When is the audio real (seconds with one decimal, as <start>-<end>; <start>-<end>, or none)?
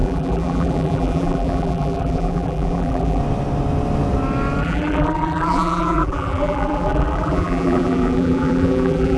3.2-4.6